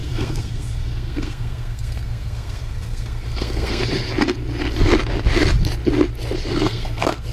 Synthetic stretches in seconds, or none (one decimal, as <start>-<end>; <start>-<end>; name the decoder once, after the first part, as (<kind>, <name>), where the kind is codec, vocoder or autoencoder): 0.0-3.8 (codec, SNAC); 6.5-7.3